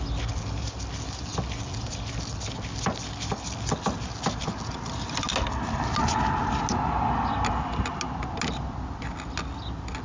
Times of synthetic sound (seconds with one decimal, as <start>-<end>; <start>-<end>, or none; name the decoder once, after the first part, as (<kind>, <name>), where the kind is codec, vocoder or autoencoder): none

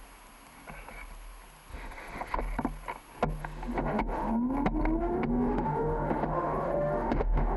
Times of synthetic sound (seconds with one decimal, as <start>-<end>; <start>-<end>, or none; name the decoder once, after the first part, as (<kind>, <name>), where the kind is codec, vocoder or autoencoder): 1.7-2.4 (autoencoder, DAC-VAE); 3.4-4.3; 5.0-7.6

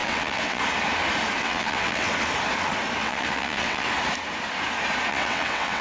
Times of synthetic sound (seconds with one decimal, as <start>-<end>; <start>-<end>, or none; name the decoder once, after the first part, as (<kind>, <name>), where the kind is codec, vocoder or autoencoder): 0.0-0.6 (vocoder, WaveNeXt); 1.4-2.1; 3.0-3.9; 5.1-5.8

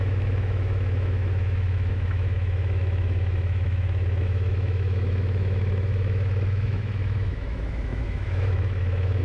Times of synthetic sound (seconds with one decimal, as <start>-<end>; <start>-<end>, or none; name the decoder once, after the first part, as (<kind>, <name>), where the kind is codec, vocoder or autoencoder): 0.0-9.2 (autoencoder, DAC-VAE)

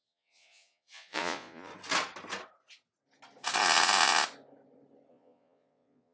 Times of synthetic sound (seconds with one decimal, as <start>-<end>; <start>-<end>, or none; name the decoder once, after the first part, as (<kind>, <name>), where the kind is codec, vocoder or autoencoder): 0.0-1.7 (vocoder, Vocos); 5.1-6.1

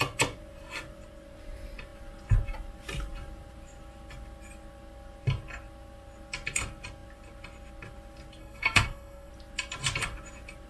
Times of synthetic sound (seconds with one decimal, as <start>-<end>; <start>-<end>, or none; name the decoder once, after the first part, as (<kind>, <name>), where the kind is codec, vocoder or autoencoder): 8.4-9.3 (codec, SNAC)

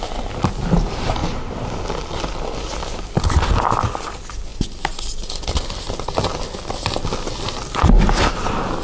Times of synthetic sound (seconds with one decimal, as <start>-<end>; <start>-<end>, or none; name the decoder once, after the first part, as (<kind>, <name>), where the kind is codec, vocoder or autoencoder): none

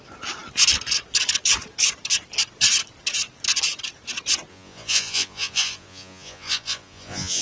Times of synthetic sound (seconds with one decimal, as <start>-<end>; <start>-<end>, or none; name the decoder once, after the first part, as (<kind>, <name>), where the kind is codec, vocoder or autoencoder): 4.5-7.4 (vocoder, Vocos)